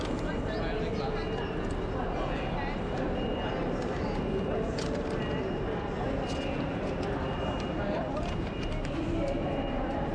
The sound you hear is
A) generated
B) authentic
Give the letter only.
B